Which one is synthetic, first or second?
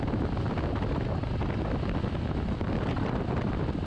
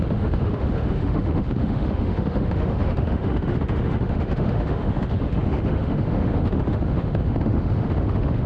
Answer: second